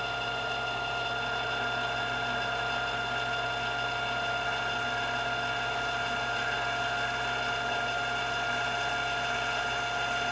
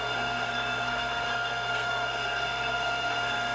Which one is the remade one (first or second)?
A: second